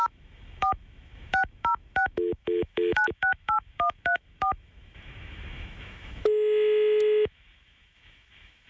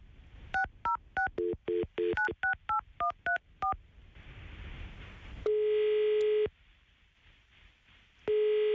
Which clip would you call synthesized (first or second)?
first